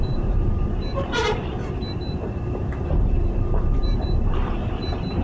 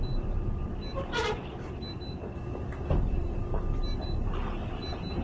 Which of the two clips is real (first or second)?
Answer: second